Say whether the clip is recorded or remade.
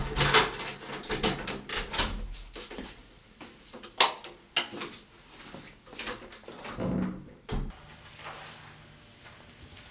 recorded